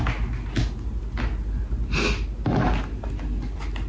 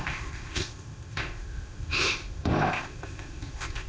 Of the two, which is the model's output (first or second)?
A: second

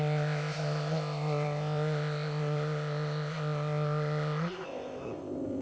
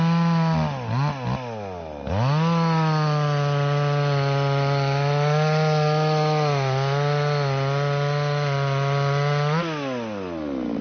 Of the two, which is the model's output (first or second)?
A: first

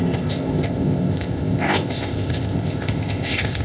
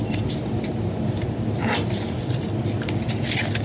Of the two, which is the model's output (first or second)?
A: first